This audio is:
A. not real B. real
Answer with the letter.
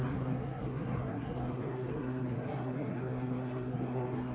A